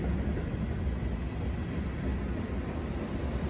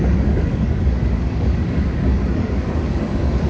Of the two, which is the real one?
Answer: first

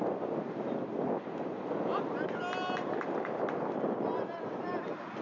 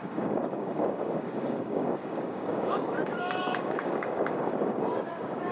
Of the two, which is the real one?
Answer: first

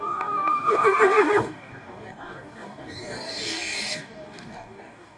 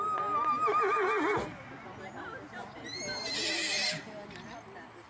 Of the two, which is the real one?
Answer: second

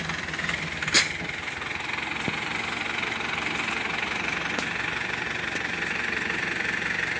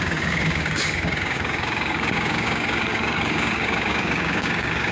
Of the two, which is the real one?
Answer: first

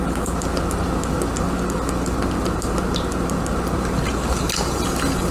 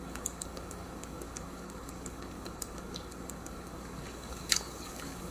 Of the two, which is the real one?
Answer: first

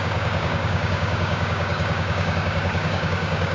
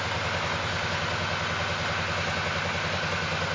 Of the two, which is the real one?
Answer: second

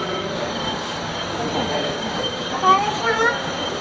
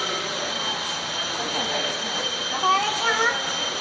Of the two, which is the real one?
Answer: second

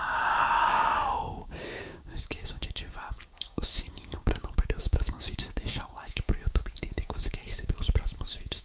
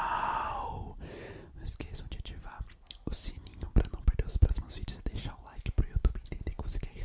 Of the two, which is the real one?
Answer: second